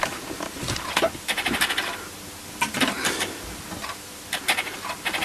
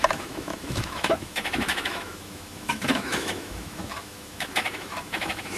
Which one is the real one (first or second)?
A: first